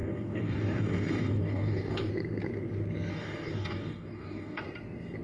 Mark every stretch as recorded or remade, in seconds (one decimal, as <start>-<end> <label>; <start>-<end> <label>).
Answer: 0.0-2.1 remade; 2.1-3.1 recorded; 3.1-4.6 remade; 4.6-5.2 recorded